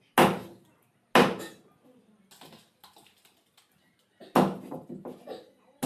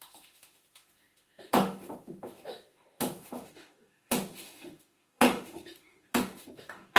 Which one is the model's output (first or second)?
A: second